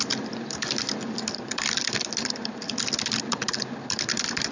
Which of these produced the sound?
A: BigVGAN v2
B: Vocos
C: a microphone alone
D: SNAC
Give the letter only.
A